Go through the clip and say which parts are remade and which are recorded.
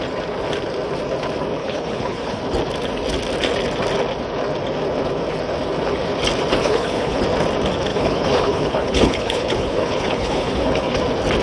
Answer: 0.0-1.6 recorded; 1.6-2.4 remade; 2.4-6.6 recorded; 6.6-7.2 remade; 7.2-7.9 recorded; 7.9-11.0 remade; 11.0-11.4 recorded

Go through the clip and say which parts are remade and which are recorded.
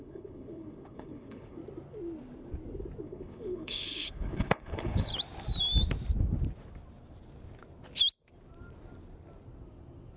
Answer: 0.0-1.6 remade; 1.6-3.0 recorded; 3.0-5.1 remade; 5.1-10.2 recorded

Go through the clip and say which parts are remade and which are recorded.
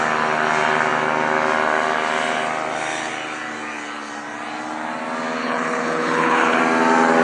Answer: 0.0-5.4 recorded; 5.4-6.6 remade; 6.6-7.2 recorded